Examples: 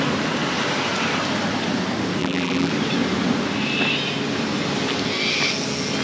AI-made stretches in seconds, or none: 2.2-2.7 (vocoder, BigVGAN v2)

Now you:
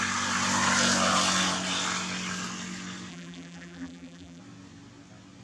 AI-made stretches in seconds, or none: 3.1-4.4 (vocoder, BigVGAN v2)